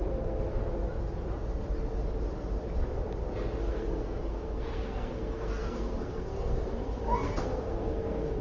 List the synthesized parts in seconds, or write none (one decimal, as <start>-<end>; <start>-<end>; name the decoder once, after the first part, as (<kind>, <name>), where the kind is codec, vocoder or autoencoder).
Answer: 0.0-0.6 (codec, SNAC); 3.6-8.4